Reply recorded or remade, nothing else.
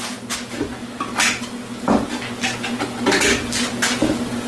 recorded